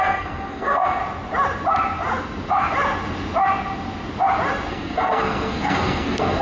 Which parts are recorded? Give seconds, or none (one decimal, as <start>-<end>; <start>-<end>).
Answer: 1.0-4.7